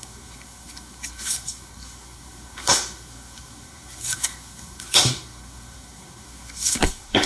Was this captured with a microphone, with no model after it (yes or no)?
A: no